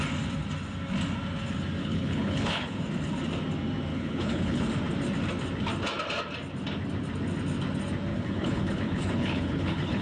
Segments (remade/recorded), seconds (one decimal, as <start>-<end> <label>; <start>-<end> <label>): 0.0-1.8 recorded; 1.8-2.8 remade; 2.8-3.9 recorded; 3.9-4.6 remade; 4.6-8.1 recorded; 8.1-10.0 remade